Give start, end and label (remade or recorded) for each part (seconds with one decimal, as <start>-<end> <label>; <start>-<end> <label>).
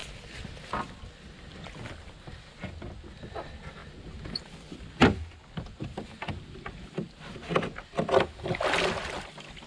0.0-9.7 recorded